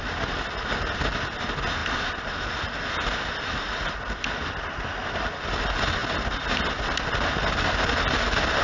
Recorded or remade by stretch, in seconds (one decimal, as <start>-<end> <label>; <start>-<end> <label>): 0.0-8.6 recorded